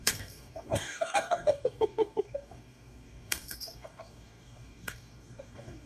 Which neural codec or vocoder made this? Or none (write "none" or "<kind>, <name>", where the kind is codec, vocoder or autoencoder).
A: codec, DAC